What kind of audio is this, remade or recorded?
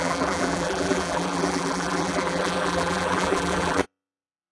remade